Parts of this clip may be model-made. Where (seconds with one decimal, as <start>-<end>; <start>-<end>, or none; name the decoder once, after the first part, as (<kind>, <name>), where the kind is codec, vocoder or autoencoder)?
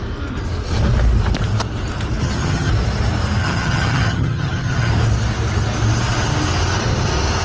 2.2-2.7 (vocoder, HiFi-GAN); 3.4-4.9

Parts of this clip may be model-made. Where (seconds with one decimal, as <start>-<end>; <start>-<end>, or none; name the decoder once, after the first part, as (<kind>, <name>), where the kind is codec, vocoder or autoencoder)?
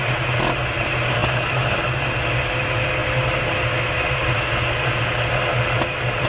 none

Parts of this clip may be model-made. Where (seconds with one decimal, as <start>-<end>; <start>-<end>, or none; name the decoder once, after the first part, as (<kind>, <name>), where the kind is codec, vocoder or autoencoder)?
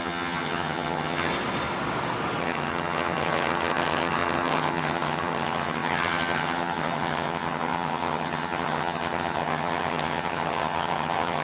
0.0-1.3 (vocoder, HiFi-GAN); 2.4-11.4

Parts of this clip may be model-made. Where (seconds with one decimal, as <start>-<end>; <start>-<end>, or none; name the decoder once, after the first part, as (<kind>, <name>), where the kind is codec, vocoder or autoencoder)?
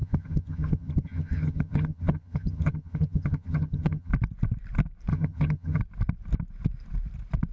0.0-4.1 (vocoder, HiFi-GAN); 5.1-5.8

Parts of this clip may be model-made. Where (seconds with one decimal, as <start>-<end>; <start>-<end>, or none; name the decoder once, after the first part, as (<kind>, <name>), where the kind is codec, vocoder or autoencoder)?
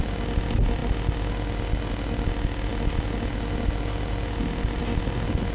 none